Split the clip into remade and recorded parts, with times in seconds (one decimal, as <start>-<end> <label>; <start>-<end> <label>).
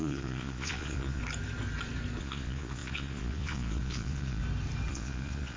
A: 0.0-1.2 remade; 1.2-2.2 recorded; 2.2-4.4 remade; 4.4-4.9 recorded; 4.9-5.6 remade